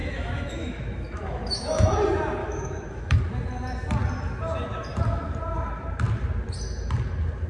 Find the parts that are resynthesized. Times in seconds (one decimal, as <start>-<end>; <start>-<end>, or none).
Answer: 0.0-2.0; 2.4-3.2